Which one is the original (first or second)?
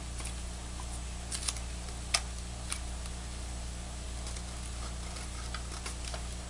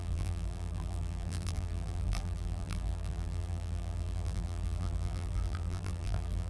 first